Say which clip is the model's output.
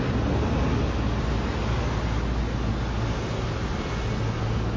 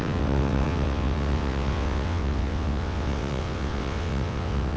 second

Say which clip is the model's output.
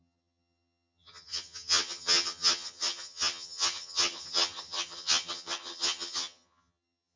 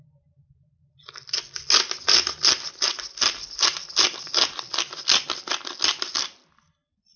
first